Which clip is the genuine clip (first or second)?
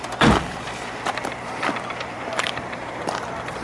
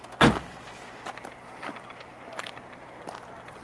second